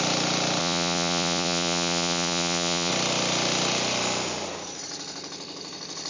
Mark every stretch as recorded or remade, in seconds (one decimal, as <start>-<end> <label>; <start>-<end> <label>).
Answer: 0.0-0.6 recorded; 0.6-2.9 remade; 2.9-6.1 recorded